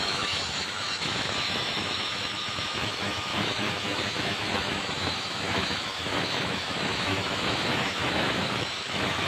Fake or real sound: fake